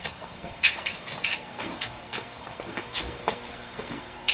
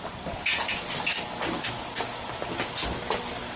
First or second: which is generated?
first